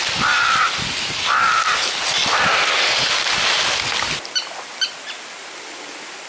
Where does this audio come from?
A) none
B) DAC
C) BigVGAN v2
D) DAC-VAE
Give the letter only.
A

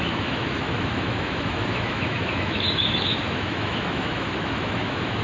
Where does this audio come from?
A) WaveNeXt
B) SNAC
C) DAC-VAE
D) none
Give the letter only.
C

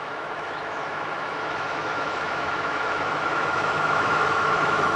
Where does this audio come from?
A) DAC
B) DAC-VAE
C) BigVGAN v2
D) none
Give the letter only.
B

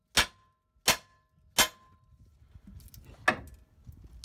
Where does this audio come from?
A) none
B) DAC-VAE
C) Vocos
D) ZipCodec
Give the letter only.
A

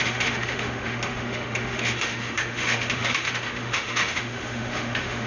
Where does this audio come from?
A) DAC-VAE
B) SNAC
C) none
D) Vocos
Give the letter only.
A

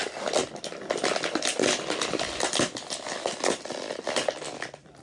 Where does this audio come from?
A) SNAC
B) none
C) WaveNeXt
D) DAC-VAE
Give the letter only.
B